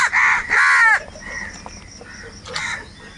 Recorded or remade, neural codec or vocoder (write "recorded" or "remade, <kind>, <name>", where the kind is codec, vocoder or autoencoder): recorded